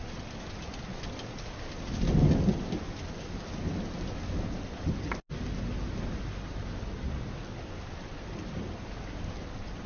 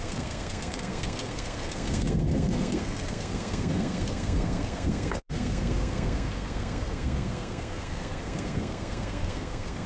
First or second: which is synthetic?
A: second